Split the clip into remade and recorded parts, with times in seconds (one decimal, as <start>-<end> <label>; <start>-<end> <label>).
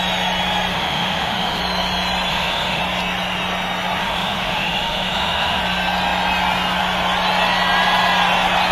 0.0-0.7 recorded; 0.7-1.6 remade; 1.6-2.3 recorded; 2.3-2.8 remade; 2.8-4.0 recorded; 4.0-5.6 remade; 5.6-8.7 recorded